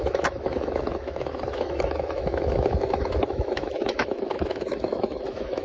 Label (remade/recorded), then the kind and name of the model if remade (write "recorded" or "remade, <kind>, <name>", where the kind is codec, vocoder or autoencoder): remade, autoencoder, DAC-VAE